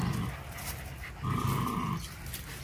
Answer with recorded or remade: recorded